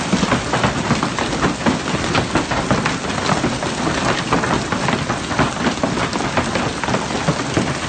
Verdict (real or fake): real